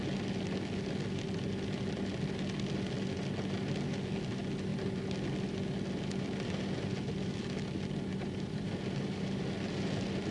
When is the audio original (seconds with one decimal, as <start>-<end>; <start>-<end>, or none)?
0.0-8.1; 8.7-10.3